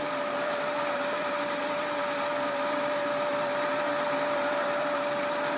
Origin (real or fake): fake